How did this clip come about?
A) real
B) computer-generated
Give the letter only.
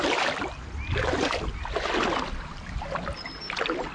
A